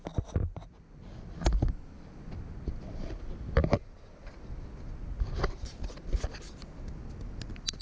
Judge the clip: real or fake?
real